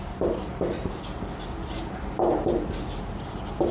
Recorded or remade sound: recorded